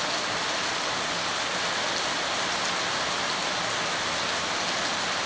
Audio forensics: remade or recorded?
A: recorded